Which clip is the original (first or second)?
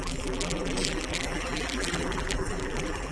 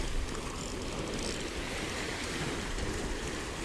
second